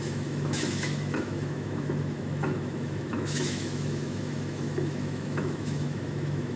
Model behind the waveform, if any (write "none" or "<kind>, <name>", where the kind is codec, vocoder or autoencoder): autoencoder, DAC-VAE